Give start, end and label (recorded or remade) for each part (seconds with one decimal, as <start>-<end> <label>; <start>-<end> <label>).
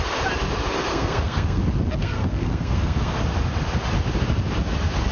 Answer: 0.0-0.9 recorded; 0.9-1.6 remade; 1.6-2.0 recorded; 2.0-3.2 remade; 3.2-5.1 recorded